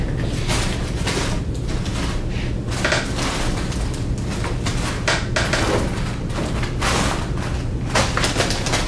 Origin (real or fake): real